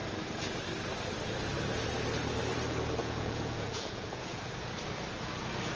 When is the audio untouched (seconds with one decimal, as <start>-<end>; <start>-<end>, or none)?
0.0-3.0; 4.5-5.8